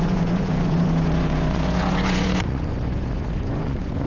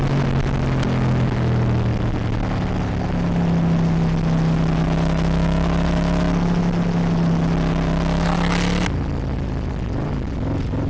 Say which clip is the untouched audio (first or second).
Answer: second